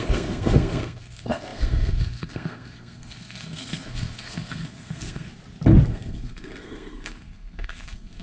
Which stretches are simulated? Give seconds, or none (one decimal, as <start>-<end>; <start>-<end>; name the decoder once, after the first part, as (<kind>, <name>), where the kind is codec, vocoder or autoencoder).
0.0-5.3 (codec, SNAC); 5.9-8.2